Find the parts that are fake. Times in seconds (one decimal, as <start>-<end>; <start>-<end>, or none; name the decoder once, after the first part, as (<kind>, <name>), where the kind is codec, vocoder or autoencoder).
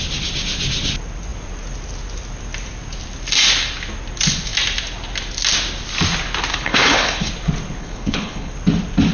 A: 6.5-7.3 (codec, HILCodec); 7.8-8.5